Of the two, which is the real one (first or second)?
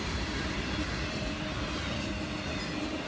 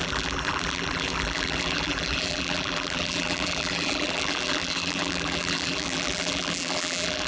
first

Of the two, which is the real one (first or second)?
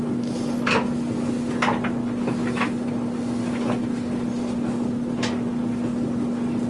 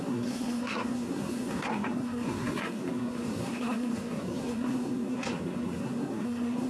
first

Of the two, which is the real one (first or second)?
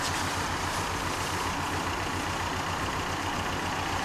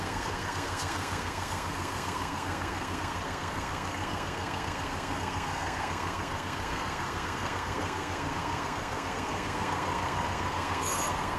first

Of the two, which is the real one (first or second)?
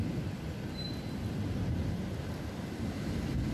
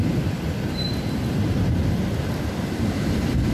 first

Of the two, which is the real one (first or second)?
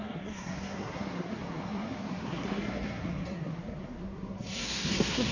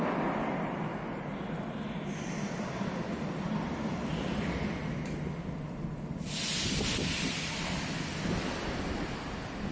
second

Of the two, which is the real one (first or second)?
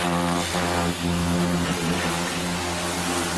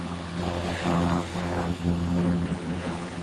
first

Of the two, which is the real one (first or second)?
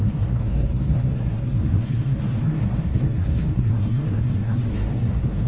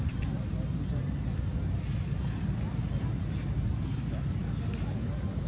second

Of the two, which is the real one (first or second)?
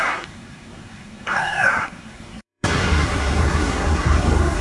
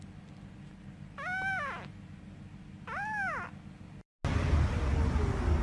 second